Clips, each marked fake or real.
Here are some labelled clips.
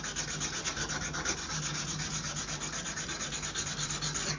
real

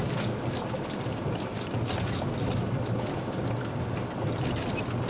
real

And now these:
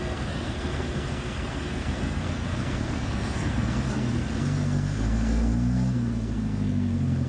fake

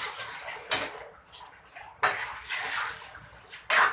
real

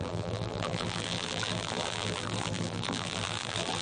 fake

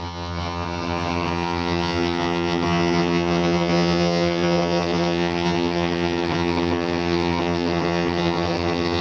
fake